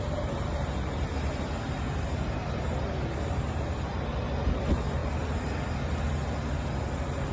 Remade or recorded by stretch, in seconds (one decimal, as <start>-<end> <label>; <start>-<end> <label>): 0.0-7.3 recorded